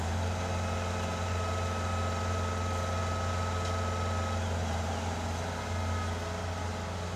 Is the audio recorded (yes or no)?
yes